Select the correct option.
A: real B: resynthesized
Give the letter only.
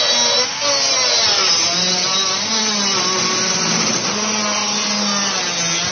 A